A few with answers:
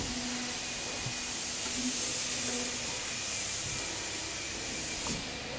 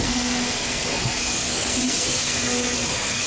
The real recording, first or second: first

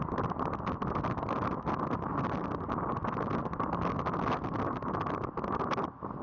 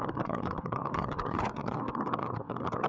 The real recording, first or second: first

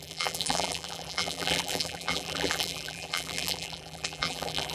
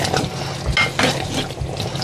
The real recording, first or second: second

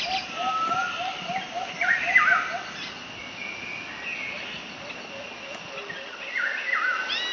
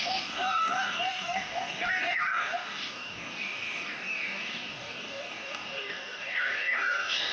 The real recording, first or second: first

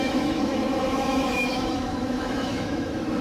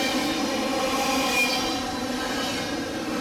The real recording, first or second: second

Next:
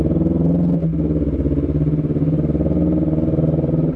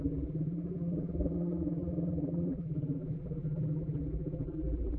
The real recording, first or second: first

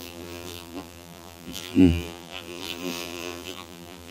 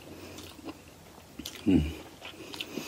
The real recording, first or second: second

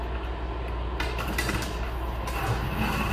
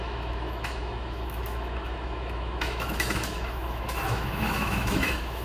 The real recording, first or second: first